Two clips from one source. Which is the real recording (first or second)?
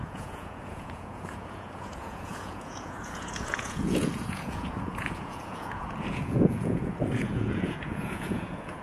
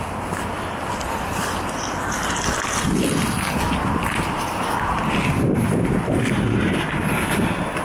second